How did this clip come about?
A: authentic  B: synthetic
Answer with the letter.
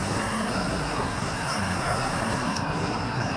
B